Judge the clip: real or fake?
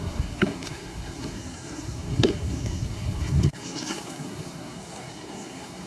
fake